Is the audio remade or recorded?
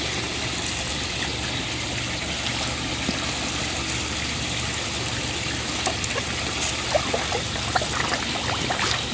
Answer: recorded